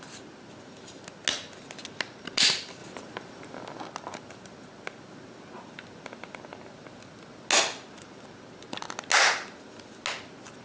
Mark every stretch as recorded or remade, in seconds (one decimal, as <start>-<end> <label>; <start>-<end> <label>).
0.0-10.6 recorded